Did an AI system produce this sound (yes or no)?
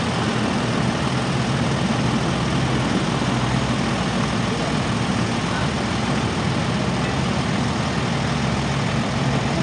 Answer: no